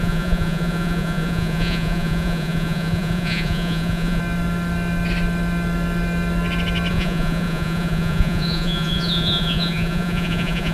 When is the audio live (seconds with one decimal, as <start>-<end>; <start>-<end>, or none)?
4.2-6.9